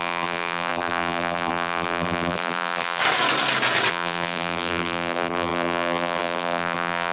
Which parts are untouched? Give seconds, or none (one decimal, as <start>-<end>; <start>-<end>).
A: 3.0-3.9